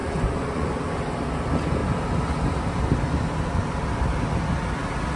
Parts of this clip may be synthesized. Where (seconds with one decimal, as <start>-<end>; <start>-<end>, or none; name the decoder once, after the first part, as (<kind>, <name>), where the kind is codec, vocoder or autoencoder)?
0.0-0.8 (vocoder, Vocos)